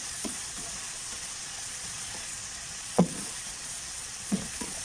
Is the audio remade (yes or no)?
yes